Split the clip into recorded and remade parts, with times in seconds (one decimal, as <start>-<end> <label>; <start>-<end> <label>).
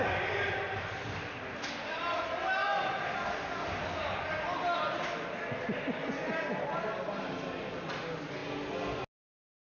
0.0-9.6 recorded